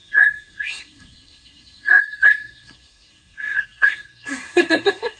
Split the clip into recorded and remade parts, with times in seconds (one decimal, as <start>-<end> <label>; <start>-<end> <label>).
0.0-5.2 remade